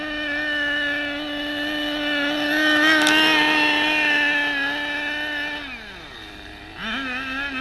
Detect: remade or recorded recorded